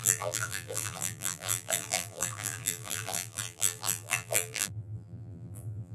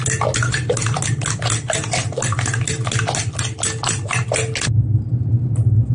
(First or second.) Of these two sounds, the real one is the second